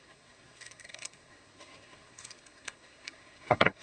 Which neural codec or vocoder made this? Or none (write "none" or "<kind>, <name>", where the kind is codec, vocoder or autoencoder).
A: codec, SNAC